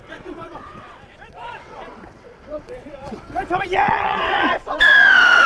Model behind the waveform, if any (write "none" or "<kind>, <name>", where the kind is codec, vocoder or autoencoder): vocoder, WaveNeXt